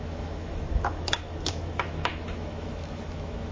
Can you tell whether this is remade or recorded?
remade